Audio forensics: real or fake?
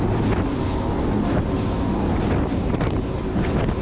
real